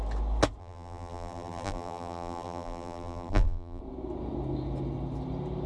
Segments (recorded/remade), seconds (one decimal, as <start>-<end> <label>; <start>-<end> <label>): 0.0-0.6 recorded; 0.6-3.8 remade; 3.8-5.7 recorded